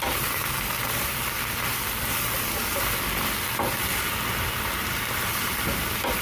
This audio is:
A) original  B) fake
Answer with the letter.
A